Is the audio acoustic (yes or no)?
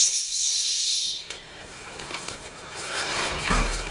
no